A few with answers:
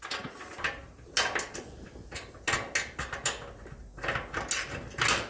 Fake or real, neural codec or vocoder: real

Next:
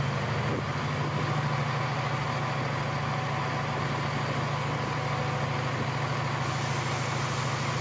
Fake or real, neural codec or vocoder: real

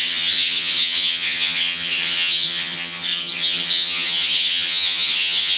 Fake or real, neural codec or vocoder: fake, vocoder, HiFi-GAN